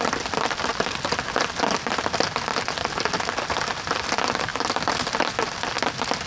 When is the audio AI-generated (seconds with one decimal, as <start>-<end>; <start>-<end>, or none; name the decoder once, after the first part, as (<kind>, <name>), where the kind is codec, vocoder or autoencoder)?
none